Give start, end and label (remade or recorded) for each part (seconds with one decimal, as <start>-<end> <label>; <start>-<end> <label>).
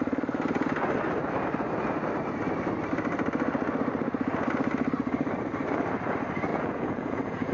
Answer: 0.0-6.5 recorded; 6.5-7.5 remade